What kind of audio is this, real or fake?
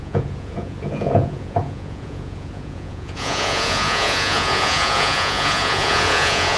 fake